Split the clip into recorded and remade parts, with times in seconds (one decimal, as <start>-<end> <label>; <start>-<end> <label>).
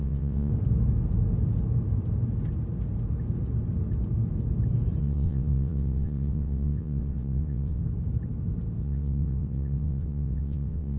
0.0-0.5 remade; 0.5-5.0 recorded; 5.0-7.8 remade; 7.8-8.8 recorded; 8.8-11.0 remade